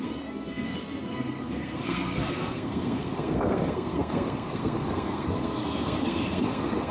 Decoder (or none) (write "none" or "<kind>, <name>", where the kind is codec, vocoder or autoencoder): codec, SNAC